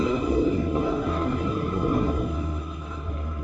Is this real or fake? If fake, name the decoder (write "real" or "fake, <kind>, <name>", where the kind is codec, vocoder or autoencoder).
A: fake, codec, SNAC